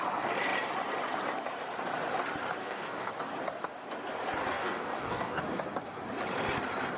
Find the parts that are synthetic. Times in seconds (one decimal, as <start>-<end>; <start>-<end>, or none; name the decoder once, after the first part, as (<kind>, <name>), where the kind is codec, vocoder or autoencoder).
2.6-3.1 (codec, DAC); 4.4-5.4